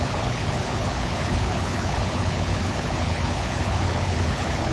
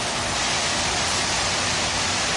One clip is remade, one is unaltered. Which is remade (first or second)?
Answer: first